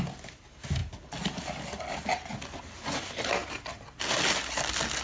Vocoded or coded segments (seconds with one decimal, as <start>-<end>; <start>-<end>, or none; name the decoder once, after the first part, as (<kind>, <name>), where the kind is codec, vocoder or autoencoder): none